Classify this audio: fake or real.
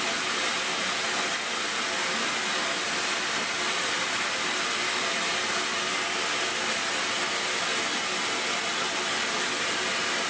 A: real